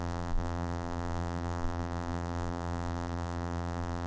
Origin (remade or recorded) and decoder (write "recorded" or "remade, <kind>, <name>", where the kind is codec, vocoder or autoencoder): remade, vocoder, BigVGAN v2